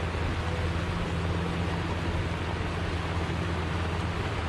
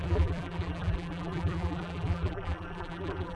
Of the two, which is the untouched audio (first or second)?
first